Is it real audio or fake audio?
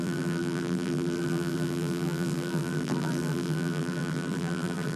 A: fake